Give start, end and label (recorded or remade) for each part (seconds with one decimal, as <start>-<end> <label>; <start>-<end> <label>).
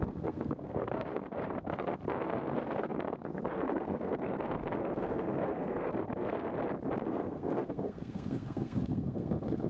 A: 0.0-6.5 remade; 6.5-7.0 recorded; 7.0-9.7 remade